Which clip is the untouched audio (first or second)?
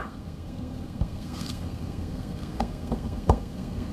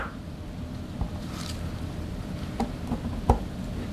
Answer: second